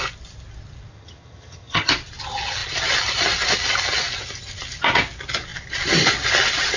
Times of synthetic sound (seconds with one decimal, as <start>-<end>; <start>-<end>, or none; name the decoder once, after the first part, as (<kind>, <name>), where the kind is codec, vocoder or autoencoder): 0.9-1.9 (vocoder, HiFi-GAN)

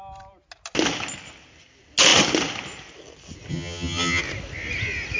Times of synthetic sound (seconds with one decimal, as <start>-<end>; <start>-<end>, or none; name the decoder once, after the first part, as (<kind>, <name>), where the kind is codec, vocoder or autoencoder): 3.5-4.2 (vocoder, HiFi-GAN)

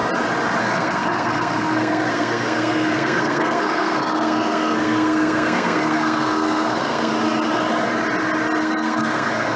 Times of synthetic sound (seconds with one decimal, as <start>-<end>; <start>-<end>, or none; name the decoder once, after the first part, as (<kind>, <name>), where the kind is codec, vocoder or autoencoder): 0.6-7.1 (codec, SNAC); 8.6-9.6

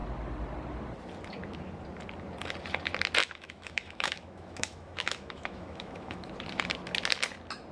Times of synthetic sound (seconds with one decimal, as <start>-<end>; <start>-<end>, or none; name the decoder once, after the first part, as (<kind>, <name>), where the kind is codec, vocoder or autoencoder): 3.2-6.3 (autoencoder, DAC-VAE)

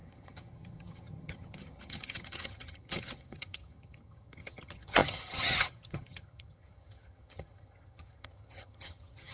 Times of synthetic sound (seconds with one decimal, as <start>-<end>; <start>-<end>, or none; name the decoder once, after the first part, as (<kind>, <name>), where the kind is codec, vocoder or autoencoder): 0.0-9.3 (vocoder, HiFi-GAN)